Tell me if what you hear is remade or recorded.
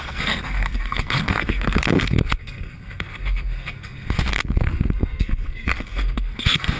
remade